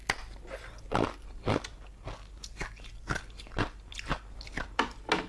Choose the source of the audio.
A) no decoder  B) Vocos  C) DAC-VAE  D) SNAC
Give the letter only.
A